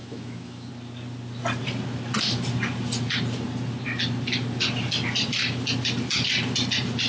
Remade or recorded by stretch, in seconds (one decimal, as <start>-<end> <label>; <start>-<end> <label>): 0.0-0.7 remade; 0.7-7.1 recorded